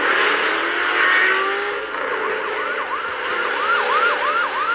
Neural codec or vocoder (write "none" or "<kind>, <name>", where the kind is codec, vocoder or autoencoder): none